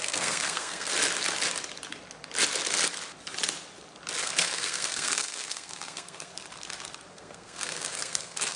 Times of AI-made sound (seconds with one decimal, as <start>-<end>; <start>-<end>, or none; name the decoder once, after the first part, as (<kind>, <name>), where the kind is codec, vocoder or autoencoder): 0.0-0.9 (codec, SNAC); 4.2-6.3; 7.1-8.6